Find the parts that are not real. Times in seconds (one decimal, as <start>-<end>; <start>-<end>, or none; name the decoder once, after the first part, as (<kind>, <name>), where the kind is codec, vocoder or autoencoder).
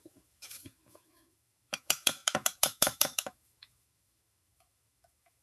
0.0-5.4 (autoencoder, DAC-VAE)